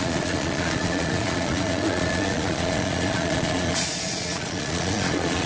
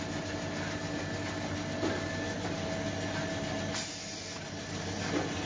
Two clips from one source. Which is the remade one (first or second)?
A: first